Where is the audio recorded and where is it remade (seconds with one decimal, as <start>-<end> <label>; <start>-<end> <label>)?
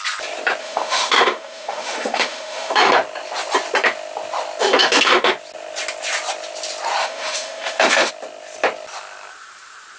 0.0-0.6 recorded; 0.6-2.9 remade; 2.9-4.6 recorded; 4.6-5.3 remade; 5.3-7.0 recorded; 7.0-8.1 remade; 8.1-10.0 recorded